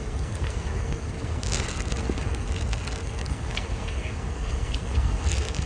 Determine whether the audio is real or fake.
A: fake